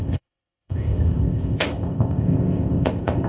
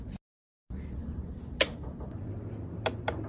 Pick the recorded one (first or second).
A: second